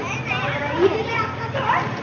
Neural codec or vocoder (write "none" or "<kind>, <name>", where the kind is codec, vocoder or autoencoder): none